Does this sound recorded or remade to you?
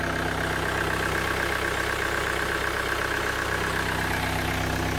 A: recorded